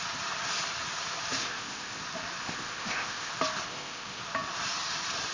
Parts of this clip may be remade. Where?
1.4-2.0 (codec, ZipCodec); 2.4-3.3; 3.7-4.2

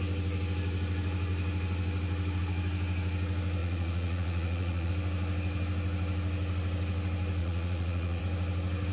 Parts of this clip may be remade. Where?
3.6-4.9 (vocoder, Vocos); 7.4-8.2

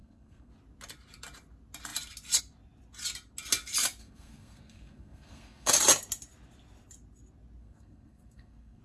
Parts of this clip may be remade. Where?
0.0-0.5 (codec, SNAC); 4.0-5.7; 7.6-8.8

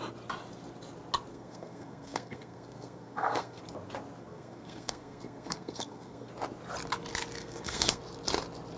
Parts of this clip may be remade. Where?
1.3-3.6 (codec, SNAC); 4.2-6.3; 7.4-8.0

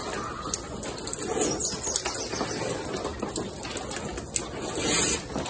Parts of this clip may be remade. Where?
none

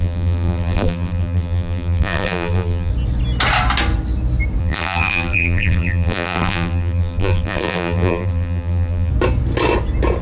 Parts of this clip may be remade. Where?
0.0-2.9 (vocoder, BigVGAN v2); 4.6-9.1

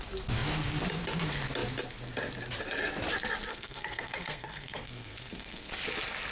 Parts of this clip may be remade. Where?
3.5-5.7 (codec, SNAC)